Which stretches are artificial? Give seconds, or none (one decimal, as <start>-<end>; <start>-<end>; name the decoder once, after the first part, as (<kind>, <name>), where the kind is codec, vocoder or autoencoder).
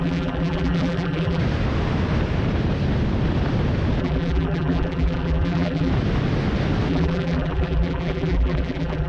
0.0-1.4 (vocoder, BigVGAN v2); 4.0-5.9; 6.9-9.1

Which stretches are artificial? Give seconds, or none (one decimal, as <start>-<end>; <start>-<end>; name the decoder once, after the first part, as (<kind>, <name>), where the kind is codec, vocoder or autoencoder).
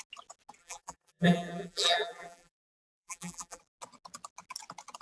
0.6-3.6 (vocoder, BigVGAN v2)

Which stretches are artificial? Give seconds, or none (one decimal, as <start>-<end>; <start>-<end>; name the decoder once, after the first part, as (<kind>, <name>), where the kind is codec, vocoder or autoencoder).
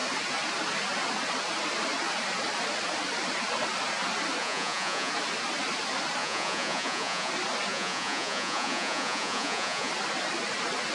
4.4-5.1 (vocoder, Vocos); 6.2-7.3; 7.7-9.9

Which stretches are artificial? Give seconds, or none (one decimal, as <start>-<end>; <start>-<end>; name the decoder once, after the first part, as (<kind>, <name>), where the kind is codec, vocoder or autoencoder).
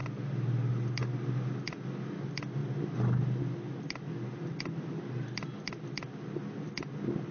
none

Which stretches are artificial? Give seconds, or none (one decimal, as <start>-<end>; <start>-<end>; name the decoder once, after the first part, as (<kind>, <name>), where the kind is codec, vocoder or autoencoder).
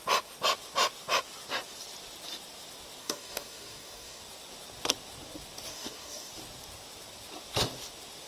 3.0-4.2 (codec, DAC); 5.7-6.3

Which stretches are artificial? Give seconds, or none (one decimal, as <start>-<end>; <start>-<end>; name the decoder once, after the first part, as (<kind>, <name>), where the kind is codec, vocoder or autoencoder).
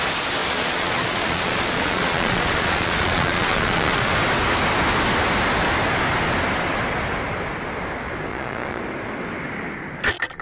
0.4-4.1 (vocoder, Vocos); 8.3-8.8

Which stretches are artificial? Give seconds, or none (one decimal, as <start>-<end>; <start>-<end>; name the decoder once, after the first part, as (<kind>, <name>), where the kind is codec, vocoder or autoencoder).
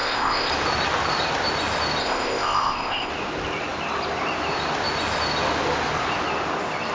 0.0-0.5 (codec, ZipCodec); 2.0-3.1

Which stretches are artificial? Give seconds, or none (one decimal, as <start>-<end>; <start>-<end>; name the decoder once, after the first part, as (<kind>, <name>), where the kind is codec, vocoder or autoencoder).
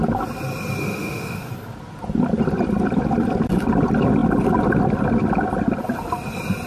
0.8-1.5 (autoencoder, DAC-VAE)